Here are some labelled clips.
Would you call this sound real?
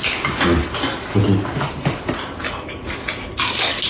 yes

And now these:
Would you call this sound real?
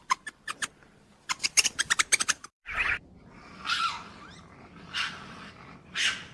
no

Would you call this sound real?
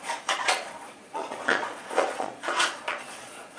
no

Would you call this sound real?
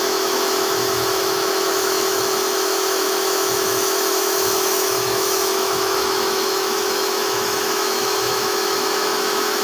no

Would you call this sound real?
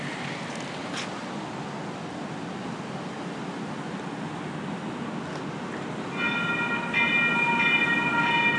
yes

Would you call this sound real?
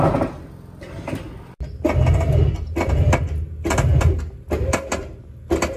yes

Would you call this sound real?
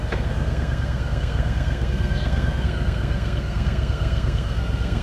no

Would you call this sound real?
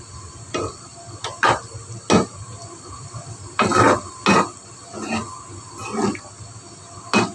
yes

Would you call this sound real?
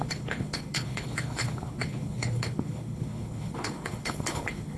no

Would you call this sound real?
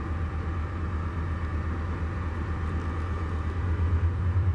no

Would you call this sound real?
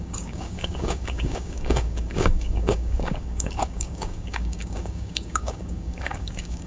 no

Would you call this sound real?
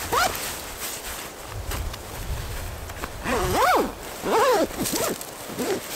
yes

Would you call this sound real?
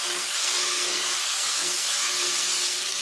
no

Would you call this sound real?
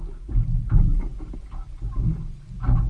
yes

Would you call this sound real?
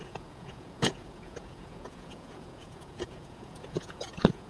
no